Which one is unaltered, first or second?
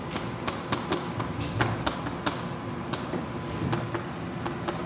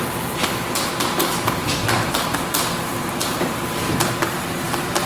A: first